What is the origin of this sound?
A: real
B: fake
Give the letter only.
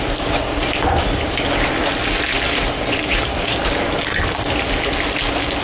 A